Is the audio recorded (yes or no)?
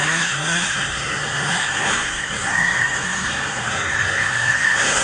no